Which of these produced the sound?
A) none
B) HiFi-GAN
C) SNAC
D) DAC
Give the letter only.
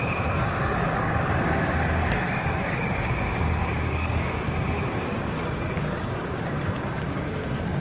D